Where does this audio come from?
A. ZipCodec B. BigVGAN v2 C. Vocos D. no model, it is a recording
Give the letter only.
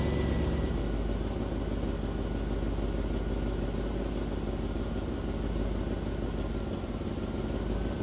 D